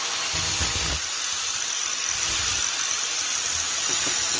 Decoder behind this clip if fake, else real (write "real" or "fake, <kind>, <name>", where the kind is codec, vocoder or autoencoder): real